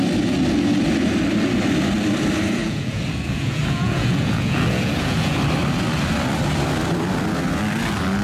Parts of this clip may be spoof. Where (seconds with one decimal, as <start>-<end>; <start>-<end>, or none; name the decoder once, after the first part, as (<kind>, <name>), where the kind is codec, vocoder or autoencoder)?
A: 2.6-5.4 (vocoder, Vocos)